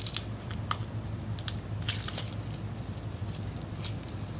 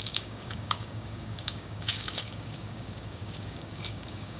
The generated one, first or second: second